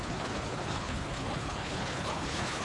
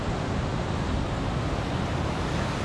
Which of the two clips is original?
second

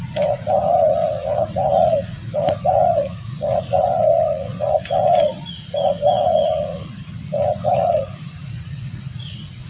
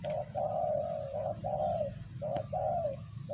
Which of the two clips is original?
second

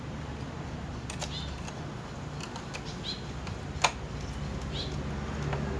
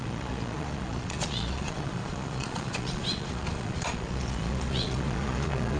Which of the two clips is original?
first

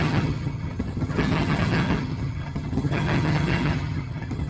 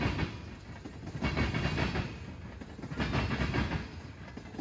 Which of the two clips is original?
second